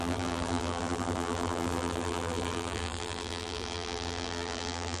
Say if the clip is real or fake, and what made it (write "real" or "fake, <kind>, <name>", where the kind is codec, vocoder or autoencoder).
fake, vocoder, BigVGAN v2